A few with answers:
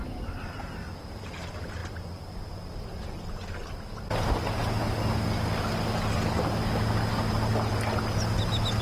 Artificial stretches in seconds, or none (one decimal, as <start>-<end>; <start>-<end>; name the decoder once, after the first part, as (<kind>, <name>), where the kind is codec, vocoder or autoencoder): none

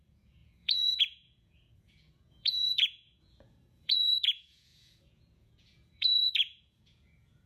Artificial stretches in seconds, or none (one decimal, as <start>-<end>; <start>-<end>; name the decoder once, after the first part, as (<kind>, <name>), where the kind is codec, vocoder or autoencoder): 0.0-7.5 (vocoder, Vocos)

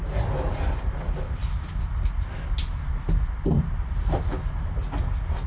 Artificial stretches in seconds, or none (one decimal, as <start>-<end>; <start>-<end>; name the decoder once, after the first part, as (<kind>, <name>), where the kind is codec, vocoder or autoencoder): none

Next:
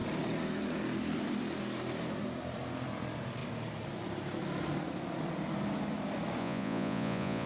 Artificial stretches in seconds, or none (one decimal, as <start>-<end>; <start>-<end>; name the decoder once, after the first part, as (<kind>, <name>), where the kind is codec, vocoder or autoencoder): 6.4-7.5 (vocoder, Vocos)